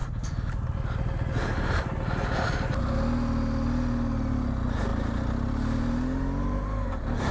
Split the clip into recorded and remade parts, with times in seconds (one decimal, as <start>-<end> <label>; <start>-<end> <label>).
0.0-7.3 recorded